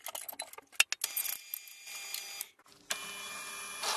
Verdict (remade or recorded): recorded